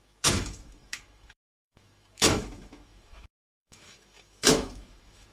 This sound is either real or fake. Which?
fake